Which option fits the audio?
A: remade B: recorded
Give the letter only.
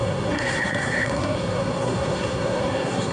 A